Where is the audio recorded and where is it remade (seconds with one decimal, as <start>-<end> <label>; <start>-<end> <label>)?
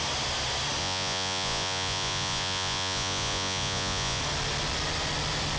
0.0-0.8 recorded; 0.8-4.2 remade; 4.2-5.6 recorded